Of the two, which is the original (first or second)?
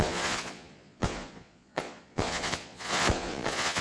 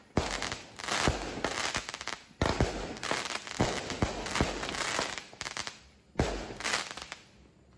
second